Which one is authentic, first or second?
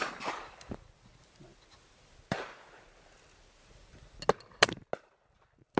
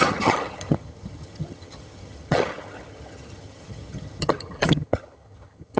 first